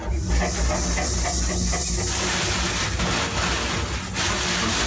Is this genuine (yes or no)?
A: yes